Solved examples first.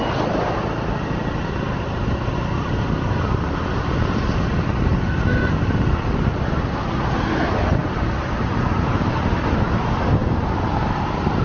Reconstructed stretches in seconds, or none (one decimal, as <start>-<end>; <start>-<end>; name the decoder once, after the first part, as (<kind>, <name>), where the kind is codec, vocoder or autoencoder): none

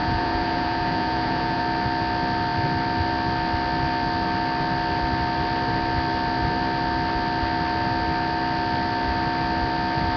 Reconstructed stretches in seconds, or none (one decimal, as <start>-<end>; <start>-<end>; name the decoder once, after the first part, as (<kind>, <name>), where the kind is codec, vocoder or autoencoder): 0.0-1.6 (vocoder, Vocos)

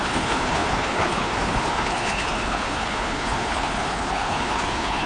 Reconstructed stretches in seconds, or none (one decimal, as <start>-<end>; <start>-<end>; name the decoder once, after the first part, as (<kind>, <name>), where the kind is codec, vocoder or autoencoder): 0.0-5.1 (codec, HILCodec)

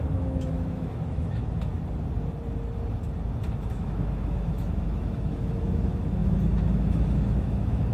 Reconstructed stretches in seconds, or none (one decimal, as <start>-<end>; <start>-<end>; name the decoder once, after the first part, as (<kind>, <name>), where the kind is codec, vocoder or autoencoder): 0.0-1.7 (autoencoder, DAC-VAE); 3.7-7.9

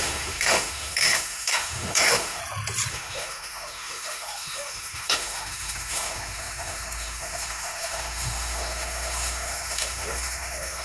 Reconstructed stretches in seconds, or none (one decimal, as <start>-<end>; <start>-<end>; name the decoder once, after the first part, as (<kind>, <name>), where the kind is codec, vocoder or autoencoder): 0.0-2.4 (autoencoder, DAC-VAE); 2.9-10.8

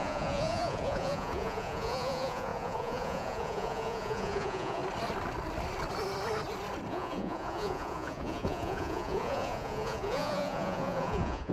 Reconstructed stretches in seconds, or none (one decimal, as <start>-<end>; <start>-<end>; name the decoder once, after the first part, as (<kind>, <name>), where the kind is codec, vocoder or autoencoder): 0.0-4.8 (vocoder, Vocos); 6.9-11.5

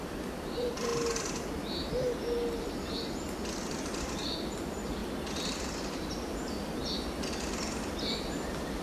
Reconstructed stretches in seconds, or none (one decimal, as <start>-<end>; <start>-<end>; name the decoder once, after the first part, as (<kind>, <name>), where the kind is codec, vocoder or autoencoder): 0.0-0.9 (vocoder, BigVGAN v2); 4.0-5.0; 5.5-6.8; 7.4-8.8

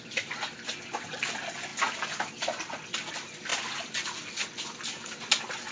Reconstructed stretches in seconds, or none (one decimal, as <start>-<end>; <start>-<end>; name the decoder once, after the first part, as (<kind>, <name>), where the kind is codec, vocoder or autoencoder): none